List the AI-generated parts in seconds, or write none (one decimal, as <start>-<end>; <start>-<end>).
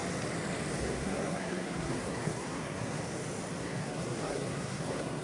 0.8-3.0; 3.6-5.2